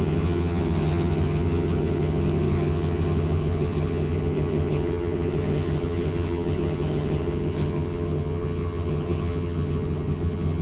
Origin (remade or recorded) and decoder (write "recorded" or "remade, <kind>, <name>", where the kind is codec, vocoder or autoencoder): remade, vocoder, HiFi-GAN